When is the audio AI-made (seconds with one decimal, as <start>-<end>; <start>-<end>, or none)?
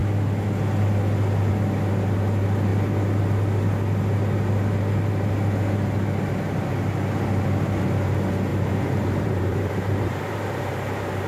8.5-11.3